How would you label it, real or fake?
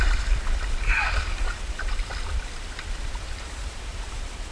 fake